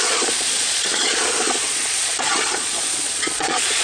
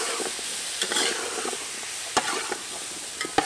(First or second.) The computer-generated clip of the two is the first